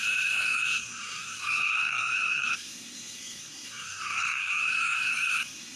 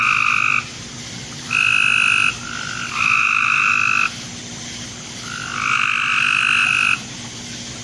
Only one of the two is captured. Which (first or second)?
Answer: second